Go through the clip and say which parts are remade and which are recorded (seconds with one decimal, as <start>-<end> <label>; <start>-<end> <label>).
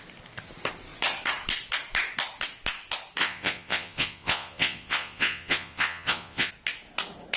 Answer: 0.0-3.2 recorded; 3.2-6.5 remade; 6.5-7.4 recorded